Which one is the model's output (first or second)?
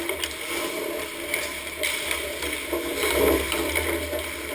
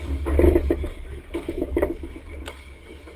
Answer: second